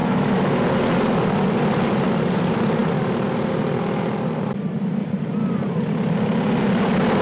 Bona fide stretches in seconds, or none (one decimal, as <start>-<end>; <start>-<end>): 0.6-7.2